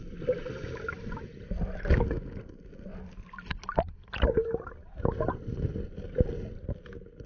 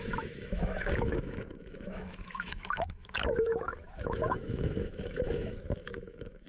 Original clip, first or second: first